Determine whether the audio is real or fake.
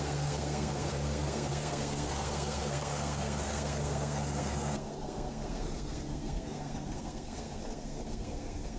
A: fake